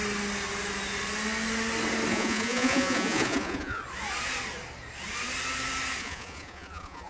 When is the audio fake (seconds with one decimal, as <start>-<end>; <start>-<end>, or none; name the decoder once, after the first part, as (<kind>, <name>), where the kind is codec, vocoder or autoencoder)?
2.1-3.8 (vocoder, Vocos); 6.0-7.1